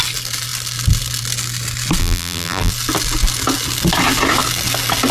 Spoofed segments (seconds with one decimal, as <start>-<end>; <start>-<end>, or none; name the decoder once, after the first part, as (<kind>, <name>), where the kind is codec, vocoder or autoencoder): 2.0-2.7 (vocoder, BigVGAN v2)

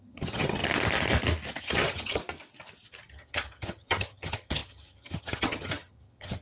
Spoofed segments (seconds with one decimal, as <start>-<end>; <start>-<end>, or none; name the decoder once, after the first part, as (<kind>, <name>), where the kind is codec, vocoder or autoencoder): 0.0-0.6 (vocoder, HiFi-GAN); 1.6-2.2; 3.1-6.4